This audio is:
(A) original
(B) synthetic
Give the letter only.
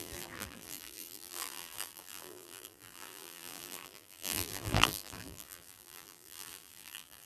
B